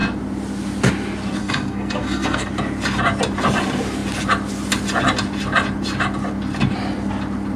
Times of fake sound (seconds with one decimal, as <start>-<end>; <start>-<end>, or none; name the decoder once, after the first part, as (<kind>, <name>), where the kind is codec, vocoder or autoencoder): 1.4-2.5 (codec, SNAC)